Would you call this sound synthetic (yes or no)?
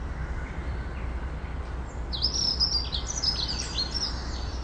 no